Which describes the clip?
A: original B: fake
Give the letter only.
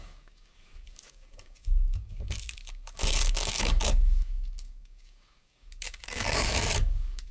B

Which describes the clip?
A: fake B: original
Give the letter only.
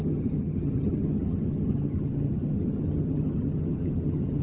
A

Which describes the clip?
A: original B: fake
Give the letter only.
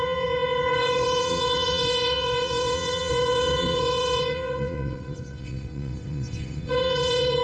B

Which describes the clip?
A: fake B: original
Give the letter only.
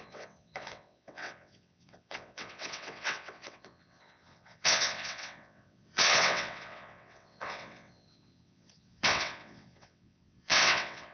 A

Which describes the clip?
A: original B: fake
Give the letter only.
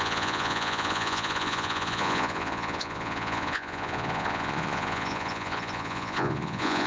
B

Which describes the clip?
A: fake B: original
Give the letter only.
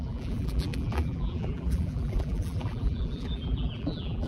A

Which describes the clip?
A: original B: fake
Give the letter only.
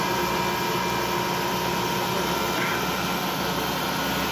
A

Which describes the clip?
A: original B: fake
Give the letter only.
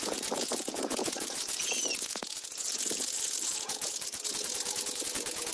B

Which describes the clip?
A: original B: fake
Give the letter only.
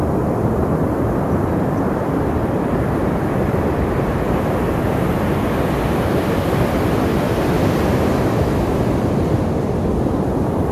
B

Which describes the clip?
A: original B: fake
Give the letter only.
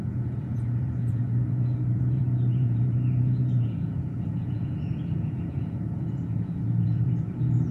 B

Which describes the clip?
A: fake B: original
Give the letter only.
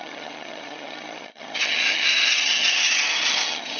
A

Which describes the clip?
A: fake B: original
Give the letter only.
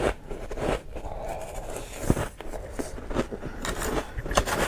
B